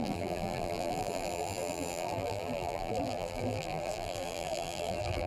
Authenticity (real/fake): fake